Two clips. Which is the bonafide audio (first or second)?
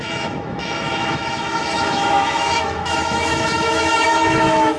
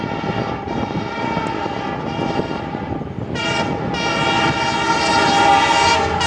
second